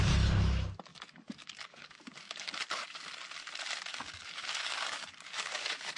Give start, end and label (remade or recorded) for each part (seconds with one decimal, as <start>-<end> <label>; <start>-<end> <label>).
0.0-0.9 recorded; 0.9-3.1 remade; 3.1-3.9 recorded; 3.9-6.0 remade